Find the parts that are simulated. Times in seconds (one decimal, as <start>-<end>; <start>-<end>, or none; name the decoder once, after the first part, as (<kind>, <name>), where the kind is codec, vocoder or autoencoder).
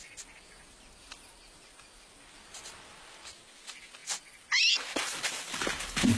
none